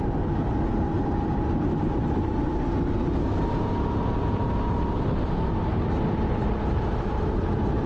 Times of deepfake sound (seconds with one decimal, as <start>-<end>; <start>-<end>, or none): none